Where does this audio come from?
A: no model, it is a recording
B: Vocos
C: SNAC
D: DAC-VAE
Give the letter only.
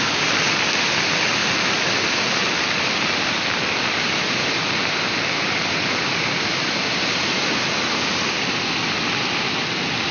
A